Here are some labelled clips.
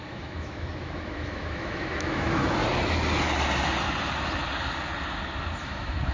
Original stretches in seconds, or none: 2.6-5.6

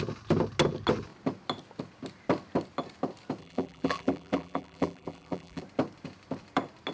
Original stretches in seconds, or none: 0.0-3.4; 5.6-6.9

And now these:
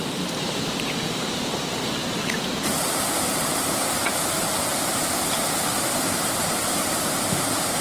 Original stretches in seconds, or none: none